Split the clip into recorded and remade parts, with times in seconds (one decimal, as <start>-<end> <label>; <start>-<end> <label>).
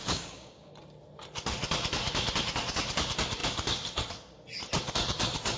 0.0-0.7 remade; 0.7-5.6 recorded